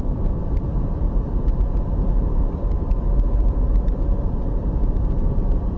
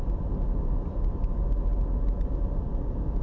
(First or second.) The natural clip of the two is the second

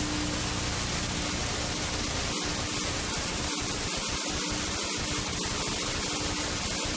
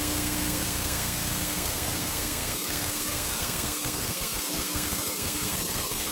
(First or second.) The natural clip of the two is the first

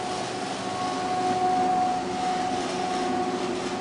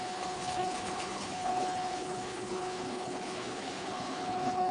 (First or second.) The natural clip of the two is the first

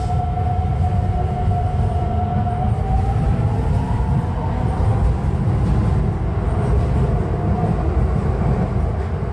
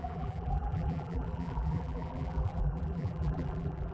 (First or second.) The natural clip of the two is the first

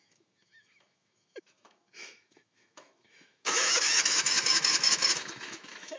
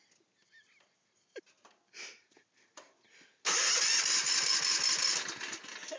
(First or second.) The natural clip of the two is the second